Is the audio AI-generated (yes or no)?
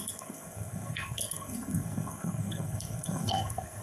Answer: yes